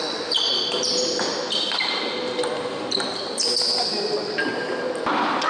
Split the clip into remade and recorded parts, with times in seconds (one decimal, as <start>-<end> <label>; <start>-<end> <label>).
0.0-5.5 recorded